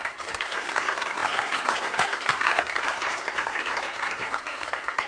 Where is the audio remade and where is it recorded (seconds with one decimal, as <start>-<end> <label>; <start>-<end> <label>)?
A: 0.0-5.1 remade